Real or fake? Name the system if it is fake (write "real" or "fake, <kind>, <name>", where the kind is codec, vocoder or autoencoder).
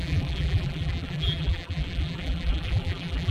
fake, vocoder, BigVGAN v2